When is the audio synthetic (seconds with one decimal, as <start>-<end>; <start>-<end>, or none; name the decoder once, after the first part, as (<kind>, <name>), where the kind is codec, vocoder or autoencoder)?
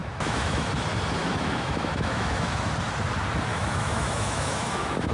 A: 0.0-0.7 (autoencoder, DAC-VAE); 1.2-2.7; 3.5-5.1